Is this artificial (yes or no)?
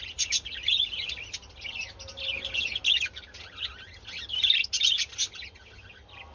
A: no